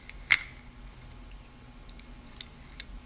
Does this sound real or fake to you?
real